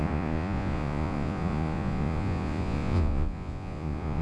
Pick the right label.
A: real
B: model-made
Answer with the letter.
B